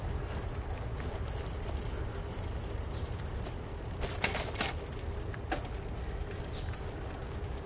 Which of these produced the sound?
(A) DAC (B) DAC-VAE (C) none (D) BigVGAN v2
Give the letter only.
C